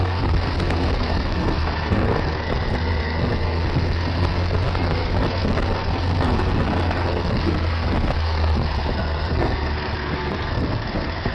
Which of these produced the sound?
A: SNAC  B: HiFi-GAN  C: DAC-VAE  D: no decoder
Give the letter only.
A